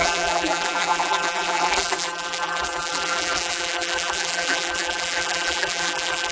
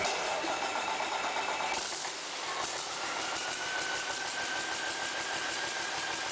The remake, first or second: first